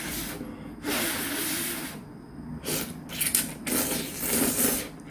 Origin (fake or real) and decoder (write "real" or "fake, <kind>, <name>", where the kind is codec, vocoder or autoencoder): real